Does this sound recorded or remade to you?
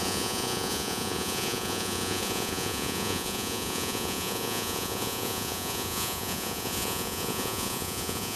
remade